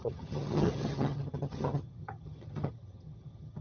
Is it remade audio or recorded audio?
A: remade